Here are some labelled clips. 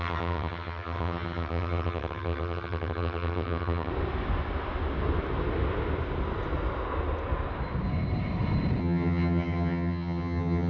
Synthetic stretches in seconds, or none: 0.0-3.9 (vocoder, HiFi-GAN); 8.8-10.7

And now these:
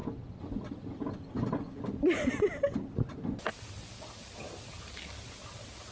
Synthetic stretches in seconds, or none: none